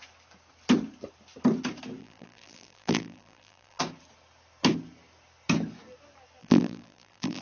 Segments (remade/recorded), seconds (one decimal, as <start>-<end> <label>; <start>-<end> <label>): 0.0-2.0 recorded; 2.0-3.8 remade; 3.8-6.4 recorded; 6.4-7.4 remade